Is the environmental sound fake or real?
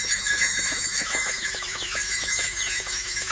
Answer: fake